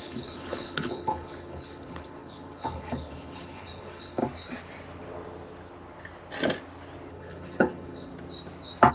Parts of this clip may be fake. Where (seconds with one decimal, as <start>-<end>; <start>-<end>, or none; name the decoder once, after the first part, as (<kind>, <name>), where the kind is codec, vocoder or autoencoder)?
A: 0.0-4.2 (codec, HILCodec); 7.1-8.1